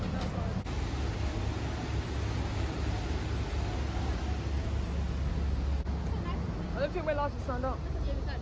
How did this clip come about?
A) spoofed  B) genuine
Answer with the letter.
B